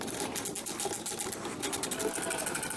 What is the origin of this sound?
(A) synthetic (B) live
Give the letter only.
B